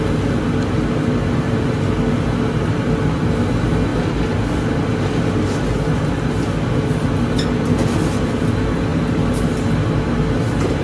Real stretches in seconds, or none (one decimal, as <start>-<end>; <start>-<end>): 0.0-10.8

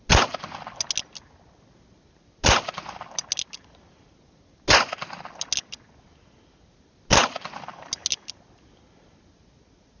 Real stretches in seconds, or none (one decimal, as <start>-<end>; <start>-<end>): 0.0-10.0

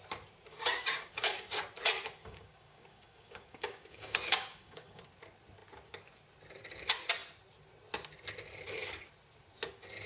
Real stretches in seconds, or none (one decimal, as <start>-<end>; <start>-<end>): 0.0-0.5; 1.6-2.2; 5.0-10.1

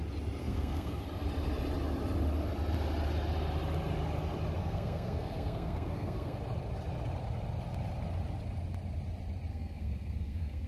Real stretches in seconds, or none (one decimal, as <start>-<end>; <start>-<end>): 0.0-0.4; 1.0-4.6; 6.4-9.5

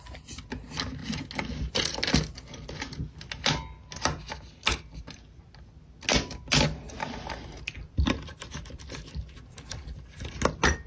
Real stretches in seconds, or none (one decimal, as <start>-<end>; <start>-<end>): 0.0-10.9

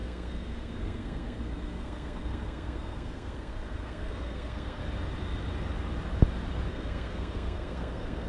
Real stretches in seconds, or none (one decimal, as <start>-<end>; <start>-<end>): 4.8-6.7